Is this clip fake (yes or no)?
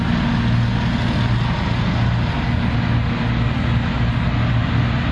no